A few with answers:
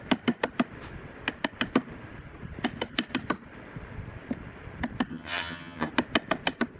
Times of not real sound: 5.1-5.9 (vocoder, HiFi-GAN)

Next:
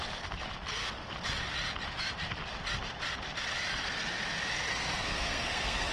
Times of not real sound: 4.7-5.9 (codec, SNAC)

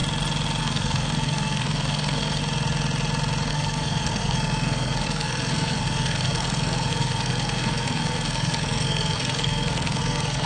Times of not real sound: 0.6-2.4 (codec, SNAC); 3.5-10.5